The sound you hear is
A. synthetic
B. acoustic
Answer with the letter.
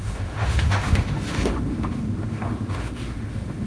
A